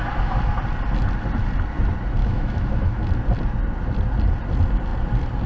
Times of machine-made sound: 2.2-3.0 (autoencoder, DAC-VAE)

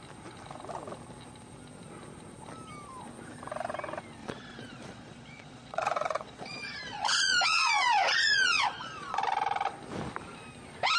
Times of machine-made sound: 4.2-9.2 (vocoder, Vocos)

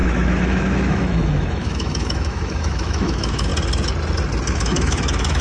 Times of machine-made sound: 0.0-3.5 (autoencoder, DAC-VAE); 4.5-5.4

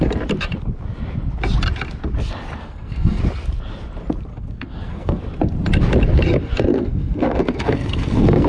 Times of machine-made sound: 2.6-3.2 (codec, SNAC); 4.3-5.2; 6.7-8.5

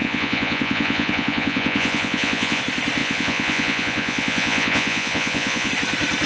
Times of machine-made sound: 0.0-2.6 (vocoder, Vocos); 3.0-5.7

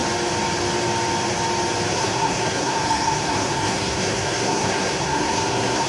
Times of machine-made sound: 1.9-5.9 (codec, SNAC)

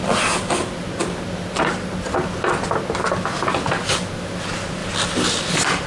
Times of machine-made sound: none